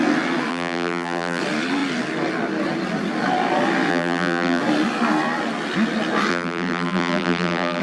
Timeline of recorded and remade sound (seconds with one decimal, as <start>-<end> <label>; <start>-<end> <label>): 0.0-0.5 recorded; 0.5-1.4 remade; 1.4-3.9 recorded; 3.9-4.6 remade; 4.6-6.3 recorded; 6.3-7.8 remade